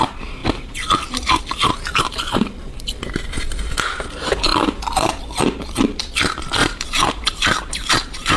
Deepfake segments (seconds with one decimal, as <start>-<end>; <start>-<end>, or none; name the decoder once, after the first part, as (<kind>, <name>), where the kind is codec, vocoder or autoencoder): 0.4-1.4 (vocoder, BigVGAN v2); 6.6-8.4